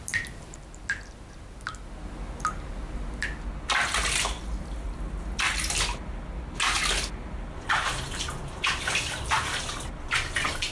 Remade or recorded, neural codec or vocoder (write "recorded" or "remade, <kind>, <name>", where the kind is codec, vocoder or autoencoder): recorded